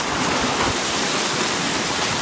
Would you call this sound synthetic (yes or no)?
yes